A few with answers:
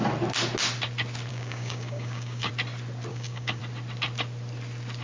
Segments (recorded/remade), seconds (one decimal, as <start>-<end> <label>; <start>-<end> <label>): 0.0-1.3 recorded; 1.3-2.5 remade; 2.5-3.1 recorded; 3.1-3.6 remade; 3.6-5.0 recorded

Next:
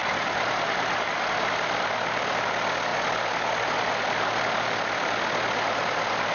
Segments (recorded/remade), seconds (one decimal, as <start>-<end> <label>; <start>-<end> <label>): 0.0-1.2 remade; 1.2-6.3 recorded

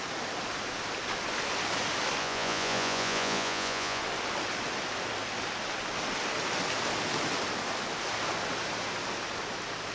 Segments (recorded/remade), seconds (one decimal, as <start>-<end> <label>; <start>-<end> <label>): 0.0-2.2 recorded; 2.2-4.0 remade; 4.0-9.9 recorded

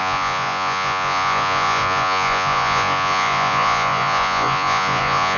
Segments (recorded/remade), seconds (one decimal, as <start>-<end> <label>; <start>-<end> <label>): 0.0-5.4 remade